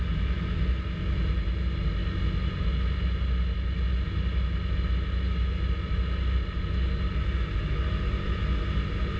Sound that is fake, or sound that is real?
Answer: real